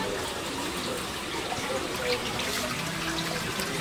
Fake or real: real